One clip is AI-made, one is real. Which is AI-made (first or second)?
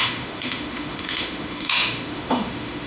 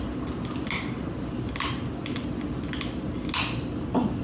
first